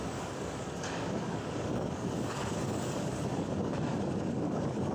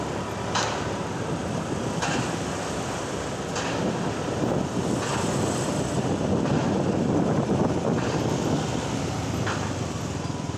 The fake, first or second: first